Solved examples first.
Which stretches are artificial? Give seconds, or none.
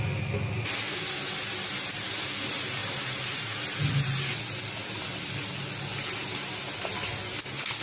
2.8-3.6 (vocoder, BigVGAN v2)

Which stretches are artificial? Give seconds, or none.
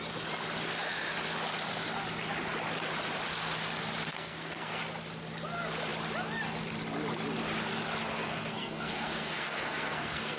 4.1-4.8 (codec, SNAC); 8.0-10.4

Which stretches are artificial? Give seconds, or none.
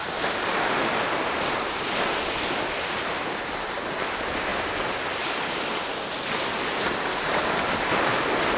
none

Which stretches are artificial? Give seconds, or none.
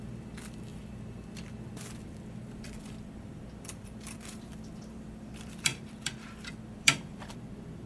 0.0-7.9 (vocoder, BigVGAN v2)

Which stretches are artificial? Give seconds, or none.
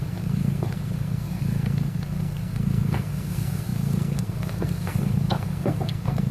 0.0-6.3 (codec, SNAC)